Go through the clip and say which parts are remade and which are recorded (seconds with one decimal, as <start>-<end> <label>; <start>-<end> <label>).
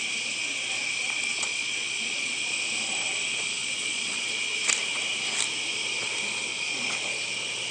0.0-1.3 recorded; 1.3-2.6 remade; 2.6-3.6 recorded; 3.6-4.4 remade; 4.4-6.5 recorded; 6.5-7.0 remade; 7.0-7.7 recorded